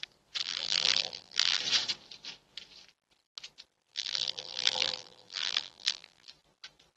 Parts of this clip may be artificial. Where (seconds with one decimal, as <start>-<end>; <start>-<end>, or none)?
0.4-1.6; 3.9-6.3